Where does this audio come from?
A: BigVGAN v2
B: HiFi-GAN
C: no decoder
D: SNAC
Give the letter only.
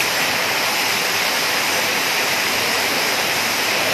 A